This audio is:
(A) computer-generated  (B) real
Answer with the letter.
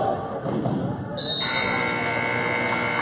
B